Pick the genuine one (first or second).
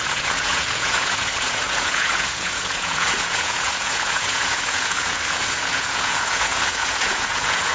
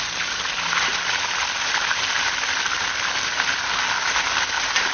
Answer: second